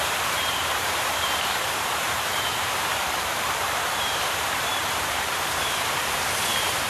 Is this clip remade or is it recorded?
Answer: remade